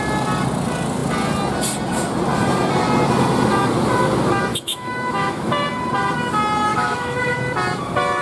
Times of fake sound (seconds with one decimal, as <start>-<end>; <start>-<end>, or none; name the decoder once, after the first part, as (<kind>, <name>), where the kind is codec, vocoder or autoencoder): 4.5-5.5 (autoencoder, DAC-VAE); 6.7-7.4